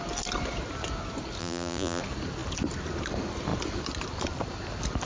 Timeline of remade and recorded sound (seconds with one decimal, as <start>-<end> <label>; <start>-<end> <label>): 0.0-1.4 recorded; 1.4-2.0 remade; 2.0-5.1 recorded